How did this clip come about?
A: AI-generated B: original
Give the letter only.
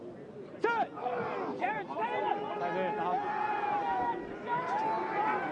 B